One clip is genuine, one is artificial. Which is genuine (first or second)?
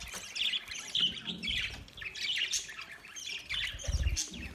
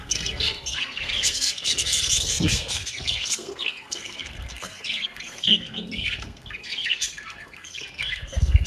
first